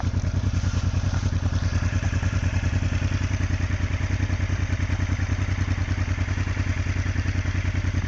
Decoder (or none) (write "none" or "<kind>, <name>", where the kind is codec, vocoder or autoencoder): vocoder, BigVGAN v2